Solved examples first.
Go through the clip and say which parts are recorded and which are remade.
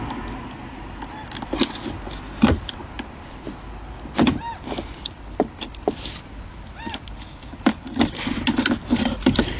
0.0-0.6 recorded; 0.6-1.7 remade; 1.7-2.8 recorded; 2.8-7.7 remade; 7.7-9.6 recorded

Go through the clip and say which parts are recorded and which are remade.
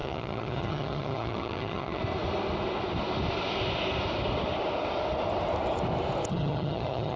0.0-2.0 remade; 2.0-6.3 recorded; 6.3-7.2 remade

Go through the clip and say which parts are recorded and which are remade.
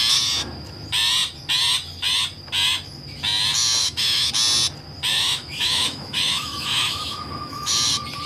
0.0-3.8 recorded; 3.8-4.3 remade; 4.3-5.1 recorded; 5.1-7.7 remade; 7.7-8.3 recorded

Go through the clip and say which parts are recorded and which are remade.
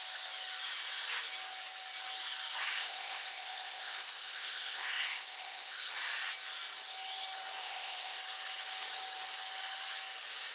0.0-2.7 recorded; 2.7-5.9 remade; 5.9-7.6 recorded; 7.6-8.2 remade; 8.2-10.5 recorded